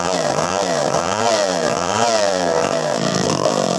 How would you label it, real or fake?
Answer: fake